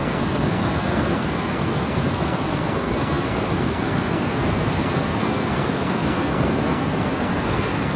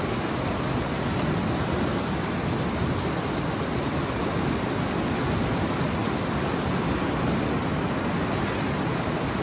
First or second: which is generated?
first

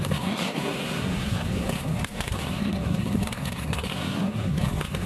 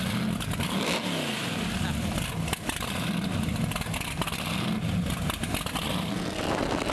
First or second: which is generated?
first